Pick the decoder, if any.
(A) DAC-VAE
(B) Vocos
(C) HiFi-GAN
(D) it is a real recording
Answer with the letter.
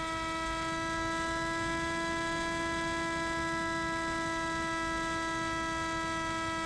D